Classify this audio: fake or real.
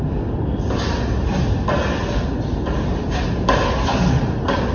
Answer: real